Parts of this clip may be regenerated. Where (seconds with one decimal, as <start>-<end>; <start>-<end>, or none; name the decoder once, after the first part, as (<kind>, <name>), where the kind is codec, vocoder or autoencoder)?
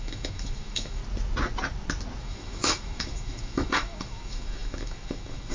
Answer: 0.0-1.0 (autoencoder, DAC-VAE); 2.2-5.5